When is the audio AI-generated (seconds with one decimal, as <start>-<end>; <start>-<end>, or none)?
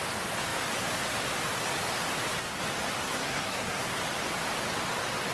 3.0-4.0